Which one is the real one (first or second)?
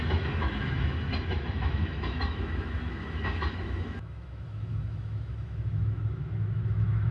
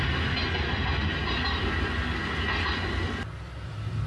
second